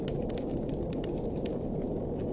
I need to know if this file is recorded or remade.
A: recorded